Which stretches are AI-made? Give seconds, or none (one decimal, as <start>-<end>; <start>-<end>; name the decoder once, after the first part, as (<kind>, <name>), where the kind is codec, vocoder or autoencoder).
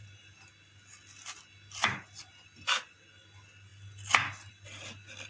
none